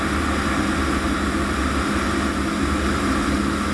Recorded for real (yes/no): yes